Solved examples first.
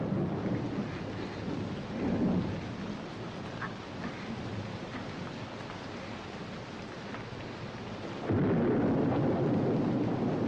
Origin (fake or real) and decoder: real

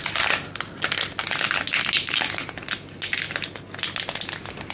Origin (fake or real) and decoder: real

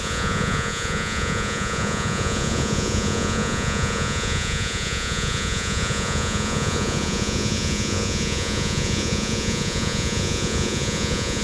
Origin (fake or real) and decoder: fake, vocoder, Vocos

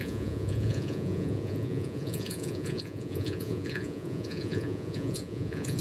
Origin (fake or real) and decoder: fake, vocoder, Vocos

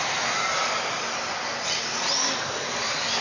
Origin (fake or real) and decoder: real